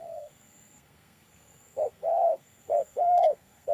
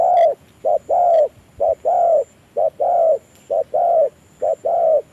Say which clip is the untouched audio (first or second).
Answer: second